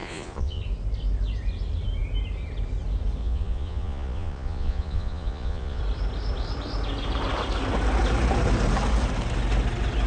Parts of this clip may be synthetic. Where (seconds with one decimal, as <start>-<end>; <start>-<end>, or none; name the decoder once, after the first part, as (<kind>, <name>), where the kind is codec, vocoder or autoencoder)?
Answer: 0.0-0.6 (vocoder, Vocos); 3.2-5.8